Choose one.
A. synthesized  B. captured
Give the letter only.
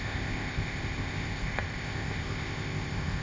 A